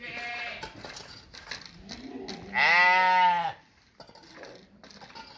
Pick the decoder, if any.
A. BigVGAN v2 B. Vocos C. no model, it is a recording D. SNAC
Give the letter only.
C